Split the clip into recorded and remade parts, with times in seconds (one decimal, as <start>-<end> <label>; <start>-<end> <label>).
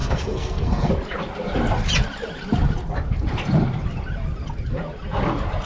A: 0.0-0.9 remade; 0.9-5.7 recorded